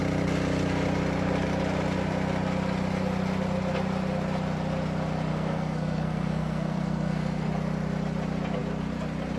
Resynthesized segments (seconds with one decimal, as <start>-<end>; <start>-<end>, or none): 5.3-7.5